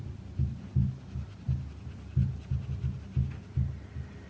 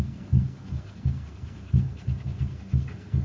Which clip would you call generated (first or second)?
second